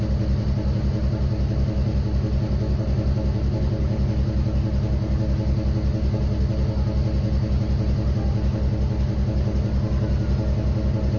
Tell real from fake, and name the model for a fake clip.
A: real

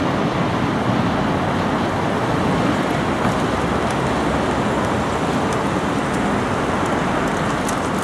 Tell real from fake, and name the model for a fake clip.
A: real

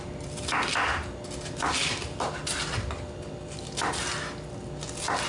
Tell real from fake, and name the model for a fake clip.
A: real